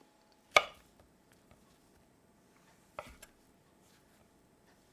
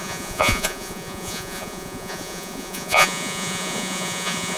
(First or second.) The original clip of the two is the first